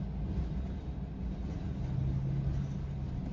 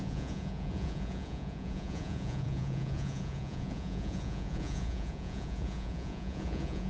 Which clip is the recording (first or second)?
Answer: first